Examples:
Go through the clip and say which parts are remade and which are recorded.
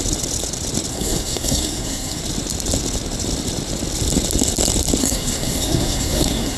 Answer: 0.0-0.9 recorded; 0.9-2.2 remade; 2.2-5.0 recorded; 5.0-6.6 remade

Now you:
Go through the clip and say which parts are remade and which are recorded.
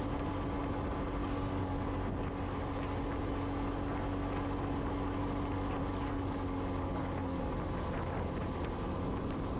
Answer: 0.0-1.2 recorded; 1.2-1.7 remade; 1.7-5.8 recorded; 5.8-7.4 remade; 7.4-9.6 recorded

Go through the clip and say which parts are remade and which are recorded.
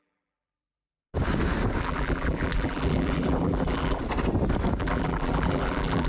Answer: 0.0-1.0 remade; 1.0-1.8 recorded; 1.8-4.0 remade; 4.0-4.8 recorded; 4.8-6.1 remade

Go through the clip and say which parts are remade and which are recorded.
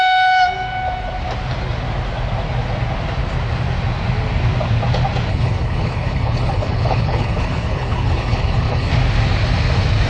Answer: 0.0-5.3 recorded; 5.3-8.9 remade; 8.9-10.1 recorded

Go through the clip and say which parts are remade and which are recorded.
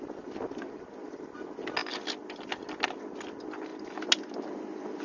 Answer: 0.0-5.0 recorded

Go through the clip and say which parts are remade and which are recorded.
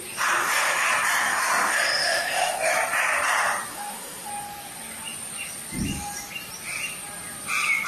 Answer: 0.0-0.4 recorded; 0.4-0.9 remade; 0.9-1.3 recorded; 1.3-2.7 remade; 2.7-3.7 recorded; 3.7-4.3 remade; 4.3-7.9 recorded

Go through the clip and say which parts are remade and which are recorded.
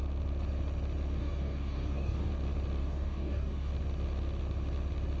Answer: 0.0-1.2 recorded; 1.2-2.3 remade; 2.3-2.8 recorded; 2.8-3.7 remade; 3.7-5.2 recorded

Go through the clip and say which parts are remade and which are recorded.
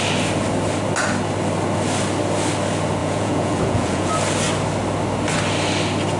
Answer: 0.0-3.0 recorded; 3.0-4.1 remade; 4.1-6.2 recorded